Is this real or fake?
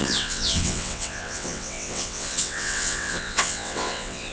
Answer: fake